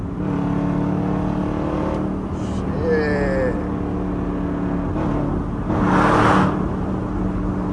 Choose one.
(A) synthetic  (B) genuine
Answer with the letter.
B